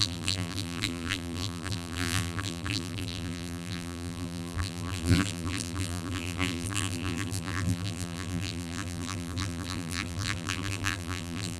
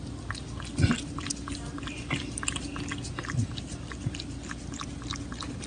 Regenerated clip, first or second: first